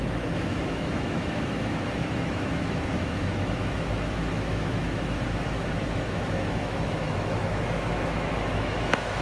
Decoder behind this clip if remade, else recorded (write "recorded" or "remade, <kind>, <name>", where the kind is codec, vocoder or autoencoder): remade, autoencoder, DAC-VAE